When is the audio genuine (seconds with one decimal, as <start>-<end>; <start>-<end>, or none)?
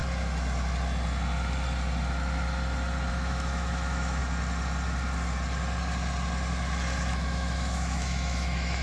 0.0-3.1; 4.2-7.1